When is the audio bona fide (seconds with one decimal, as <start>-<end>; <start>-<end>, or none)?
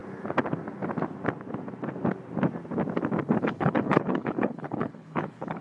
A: 0.0-3.4